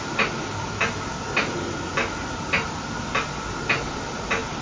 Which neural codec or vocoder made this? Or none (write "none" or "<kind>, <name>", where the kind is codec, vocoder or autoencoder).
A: none